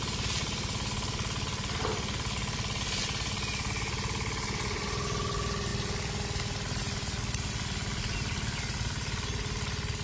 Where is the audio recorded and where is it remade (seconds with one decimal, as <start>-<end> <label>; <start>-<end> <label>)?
0.0-10.0 recorded